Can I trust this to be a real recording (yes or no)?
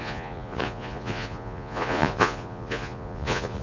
no